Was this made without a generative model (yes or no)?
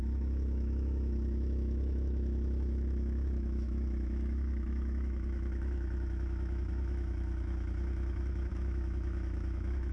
no